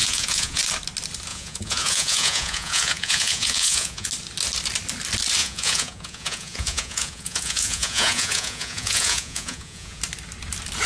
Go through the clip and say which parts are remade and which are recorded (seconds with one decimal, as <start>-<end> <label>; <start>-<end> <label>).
0.0-0.6 remade; 0.6-1.3 recorded; 1.3-4.1 remade; 4.1-5.4 recorded; 5.4-10.0 remade; 10.0-10.9 recorded